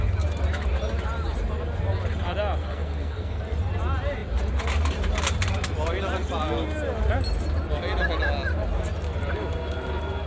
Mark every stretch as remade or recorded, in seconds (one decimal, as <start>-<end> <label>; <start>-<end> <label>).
0.0-2.6 recorded; 2.6-3.4 remade; 3.4-10.3 recorded